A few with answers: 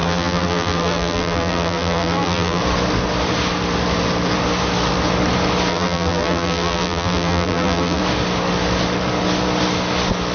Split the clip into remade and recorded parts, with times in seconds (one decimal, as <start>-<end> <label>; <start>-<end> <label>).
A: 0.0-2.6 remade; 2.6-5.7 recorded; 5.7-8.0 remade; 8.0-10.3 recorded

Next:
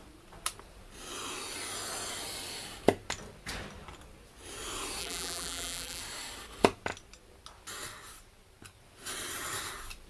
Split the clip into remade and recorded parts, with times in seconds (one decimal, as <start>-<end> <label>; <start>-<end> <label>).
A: 0.0-5.0 recorded; 5.0-6.0 remade; 6.0-10.1 recorded

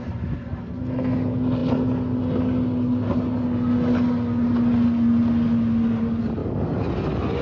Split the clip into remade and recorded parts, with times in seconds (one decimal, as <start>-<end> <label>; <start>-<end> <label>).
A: 0.0-6.4 recorded; 6.4-6.9 remade; 6.9-7.4 recorded

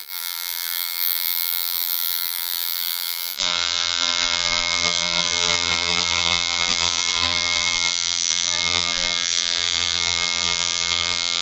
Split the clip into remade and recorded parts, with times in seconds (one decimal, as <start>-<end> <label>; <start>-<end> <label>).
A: 0.0-11.4 remade

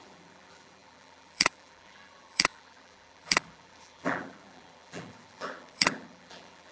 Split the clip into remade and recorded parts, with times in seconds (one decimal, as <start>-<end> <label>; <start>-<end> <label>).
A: 0.0-6.7 remade

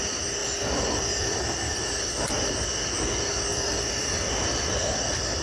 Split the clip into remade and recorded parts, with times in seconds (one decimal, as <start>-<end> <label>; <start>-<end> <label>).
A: 0.0-0.4 recorded; 0.4-2.5 remade; 2.5-3.5 recorded; 3.5-4.4 remade; 4.4-5.4 recorded

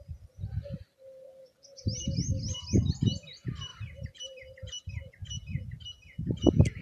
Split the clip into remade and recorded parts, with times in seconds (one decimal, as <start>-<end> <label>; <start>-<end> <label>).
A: 0.0-3.7 recorded; 3.7-4.4 remade; 4.4-6.8 recorded